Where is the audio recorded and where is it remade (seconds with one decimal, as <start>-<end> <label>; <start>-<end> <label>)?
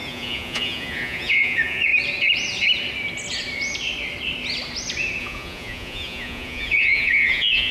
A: 0.0-1.9 remade; 1.9-5.2 recorded; 5.2-7.7 remade